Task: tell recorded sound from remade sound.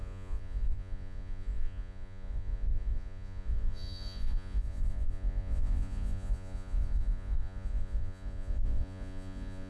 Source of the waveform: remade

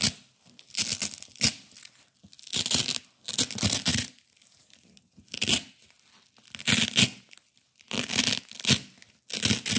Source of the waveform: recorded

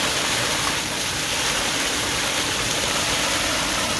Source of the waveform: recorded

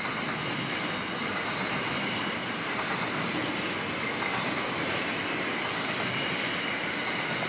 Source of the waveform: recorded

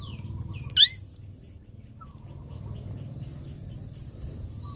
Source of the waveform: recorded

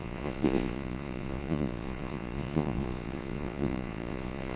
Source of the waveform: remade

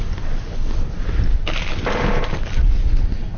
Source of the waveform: recorded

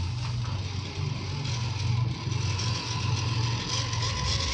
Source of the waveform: recorded